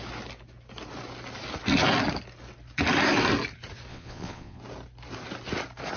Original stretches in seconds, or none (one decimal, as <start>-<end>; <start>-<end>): 0.0-3.9; 4.6-6.0

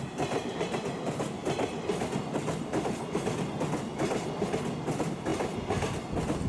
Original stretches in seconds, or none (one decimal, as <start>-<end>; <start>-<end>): 0.0-6.5

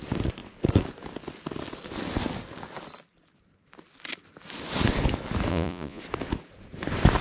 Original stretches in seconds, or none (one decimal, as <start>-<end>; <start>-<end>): 0.0-5.5; 6.0-7.2